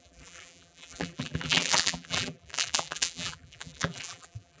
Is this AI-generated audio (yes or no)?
yes